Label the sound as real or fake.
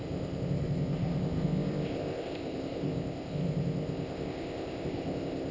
fake